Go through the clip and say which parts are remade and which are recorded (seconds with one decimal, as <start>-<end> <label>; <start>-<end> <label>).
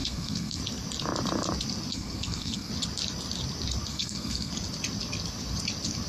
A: 0.0-0.6 remade; 0.6-1.9 recorded; 1.9-2.7 remade; 2.7-3.9 recorded; 3.9-4.5 remade; 4.5-6.1 recorded